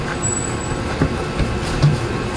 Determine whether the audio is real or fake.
real